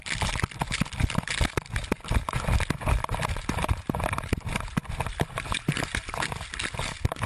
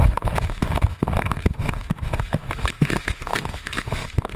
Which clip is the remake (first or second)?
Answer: second